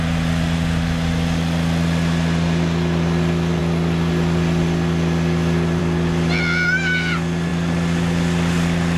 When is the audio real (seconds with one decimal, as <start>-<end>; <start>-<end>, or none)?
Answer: 0.0-9.0

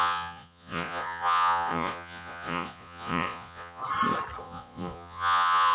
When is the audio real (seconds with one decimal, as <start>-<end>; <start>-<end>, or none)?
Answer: 3.8-4.4

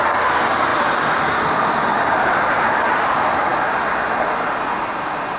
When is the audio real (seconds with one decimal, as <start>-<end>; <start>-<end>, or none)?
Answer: 0.0-1.9; 2.9-5.4

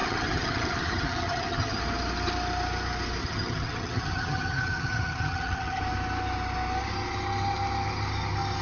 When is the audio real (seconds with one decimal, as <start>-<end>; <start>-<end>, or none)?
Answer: 1.8-3.2; 5.8-8.6

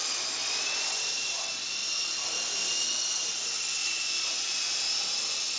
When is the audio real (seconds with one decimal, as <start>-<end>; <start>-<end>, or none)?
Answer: 0.0-3.8; 4.5-5.6

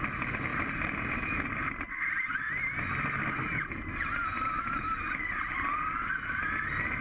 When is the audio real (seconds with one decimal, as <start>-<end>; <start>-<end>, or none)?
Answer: 0.0-7.0